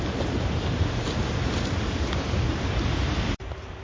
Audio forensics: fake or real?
real